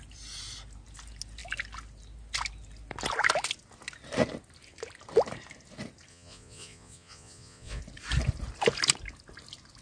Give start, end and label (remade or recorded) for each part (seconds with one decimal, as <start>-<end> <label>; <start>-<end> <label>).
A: 0.0-6.1 recorded; 6.1-7.8 remade; 7.8-9.8 recorded

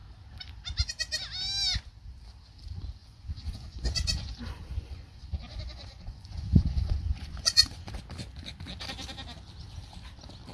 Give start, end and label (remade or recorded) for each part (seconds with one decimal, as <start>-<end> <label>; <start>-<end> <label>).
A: 0.0-3.0 recorded; 3.0-8.0 remade; 8.0-10.5 recorded

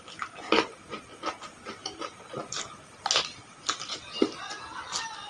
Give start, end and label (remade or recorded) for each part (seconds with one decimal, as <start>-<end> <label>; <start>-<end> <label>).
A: 0.0-5.3 recorded